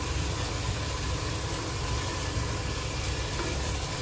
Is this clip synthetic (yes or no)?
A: no